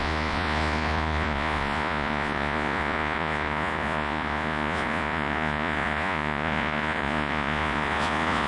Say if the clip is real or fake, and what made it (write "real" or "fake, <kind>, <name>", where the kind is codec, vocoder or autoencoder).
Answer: fake, vocoder, Vocos